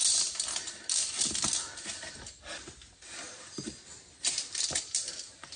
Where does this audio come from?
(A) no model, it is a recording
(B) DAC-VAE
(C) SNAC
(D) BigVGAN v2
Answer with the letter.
A